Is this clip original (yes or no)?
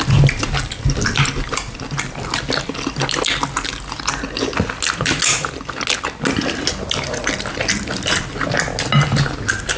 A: yes